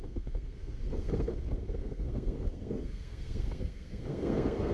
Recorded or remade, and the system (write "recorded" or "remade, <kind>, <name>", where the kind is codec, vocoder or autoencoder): remade, codec, SNAC